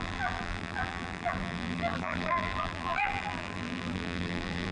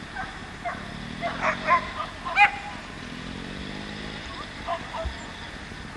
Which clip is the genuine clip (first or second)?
second